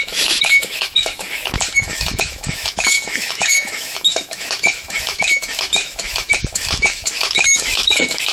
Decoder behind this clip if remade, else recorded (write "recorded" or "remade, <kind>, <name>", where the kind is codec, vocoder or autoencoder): remade, autoencoder, DAC-VAE